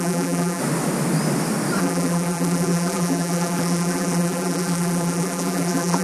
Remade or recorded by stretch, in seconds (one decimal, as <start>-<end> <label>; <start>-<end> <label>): 0.0-0.6 remade; 0.6-1.8 recorded; 1.8-6.0 remade